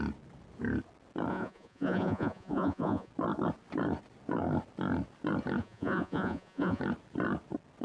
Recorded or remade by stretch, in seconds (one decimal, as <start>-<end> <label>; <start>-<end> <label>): 0.0-1.3 recorded; 1.3-3.1 remade; 3.1-5.6 recorded; 5.6-6.8 remade; 6.8-7.8 recorded